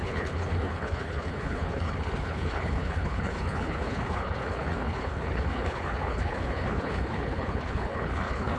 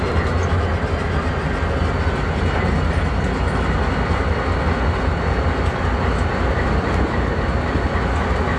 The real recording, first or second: second